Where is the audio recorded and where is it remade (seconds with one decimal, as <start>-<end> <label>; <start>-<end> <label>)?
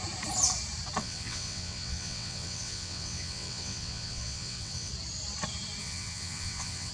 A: 0.0-1.0 recorded; 1.0-4.9 remade; 4.9-5.8 recorded; 5.8-6.9 remade